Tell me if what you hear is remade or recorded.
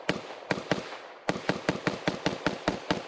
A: recorded